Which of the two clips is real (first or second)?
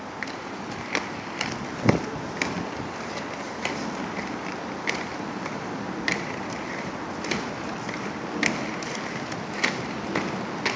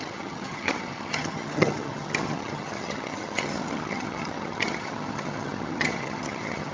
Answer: first